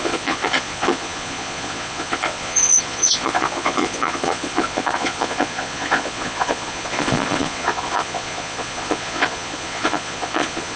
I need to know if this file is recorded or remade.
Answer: remade